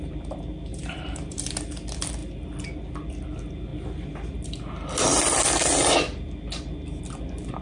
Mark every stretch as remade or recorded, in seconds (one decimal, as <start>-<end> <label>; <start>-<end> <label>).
0.0-0.7 recorded; 0.7-1.5 remade; 1.5-7.6 recorded